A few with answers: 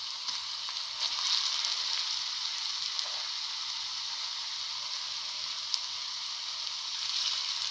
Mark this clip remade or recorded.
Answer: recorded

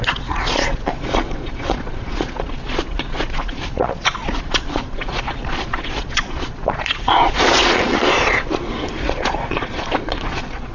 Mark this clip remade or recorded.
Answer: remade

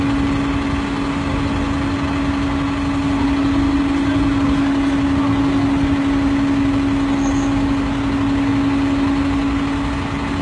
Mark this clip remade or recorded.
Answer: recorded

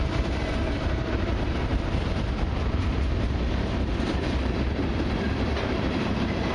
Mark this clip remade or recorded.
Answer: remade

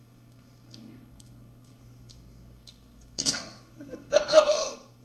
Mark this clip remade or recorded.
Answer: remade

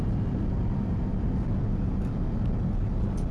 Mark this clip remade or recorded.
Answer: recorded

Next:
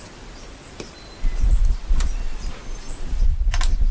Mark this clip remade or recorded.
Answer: recorded